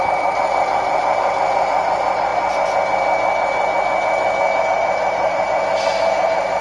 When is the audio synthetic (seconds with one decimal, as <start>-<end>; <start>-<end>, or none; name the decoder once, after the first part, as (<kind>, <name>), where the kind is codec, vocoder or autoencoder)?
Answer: 0.0-2.3 (vocoder, BigVGAN v2); 4.6-6.6